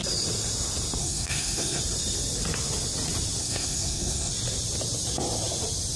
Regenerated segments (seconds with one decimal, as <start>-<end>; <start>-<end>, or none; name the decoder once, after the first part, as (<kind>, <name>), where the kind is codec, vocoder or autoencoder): 1.0-1.8 (codec, SNAC); 3.4-4.3